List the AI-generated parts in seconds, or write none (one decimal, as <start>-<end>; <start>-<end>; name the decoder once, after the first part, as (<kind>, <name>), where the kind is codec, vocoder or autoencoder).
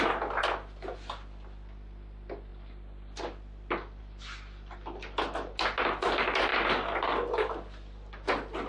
none